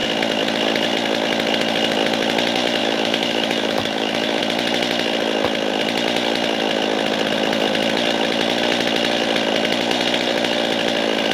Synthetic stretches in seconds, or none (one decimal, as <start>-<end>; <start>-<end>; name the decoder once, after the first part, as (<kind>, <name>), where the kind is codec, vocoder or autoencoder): 2.8-4.4 (autoencoder, DAC-VAE)

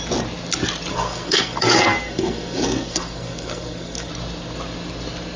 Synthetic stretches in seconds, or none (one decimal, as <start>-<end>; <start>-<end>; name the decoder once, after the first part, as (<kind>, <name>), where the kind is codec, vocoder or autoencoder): 0.9-4.1 (codec, SNAC)

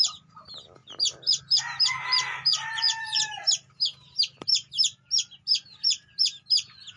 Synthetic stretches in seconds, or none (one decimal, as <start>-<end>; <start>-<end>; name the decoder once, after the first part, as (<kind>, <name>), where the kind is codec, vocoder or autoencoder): 2.5-3.2 (vocoder, Vocos)

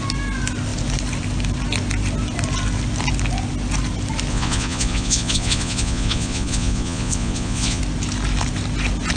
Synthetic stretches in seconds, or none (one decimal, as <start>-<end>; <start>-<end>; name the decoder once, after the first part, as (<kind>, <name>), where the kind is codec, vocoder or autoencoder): 4.3-7.8 (vocoder, Vocos)

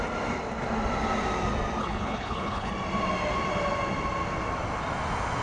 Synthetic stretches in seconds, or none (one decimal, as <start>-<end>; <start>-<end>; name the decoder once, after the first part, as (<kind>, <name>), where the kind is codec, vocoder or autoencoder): 1.8-2.7 (codec, HILCodec)